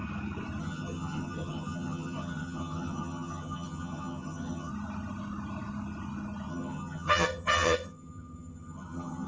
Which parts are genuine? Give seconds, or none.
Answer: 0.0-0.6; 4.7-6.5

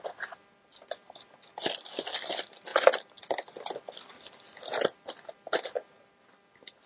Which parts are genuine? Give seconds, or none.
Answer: 0.0-6.9